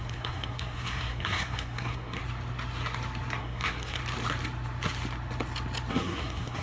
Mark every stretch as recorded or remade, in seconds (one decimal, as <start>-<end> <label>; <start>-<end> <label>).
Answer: 0.0-2.2 remade; 2.2-3.4 recorded; 3.4-4.0 remade; 4.0-5.9 recorded; 5.9-6.6 remade